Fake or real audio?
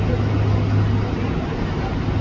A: real